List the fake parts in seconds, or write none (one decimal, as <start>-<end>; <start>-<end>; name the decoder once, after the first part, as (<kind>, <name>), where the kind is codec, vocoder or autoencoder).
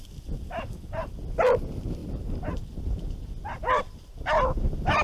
2.0-4.1 (vocoder, BigVGAN v2)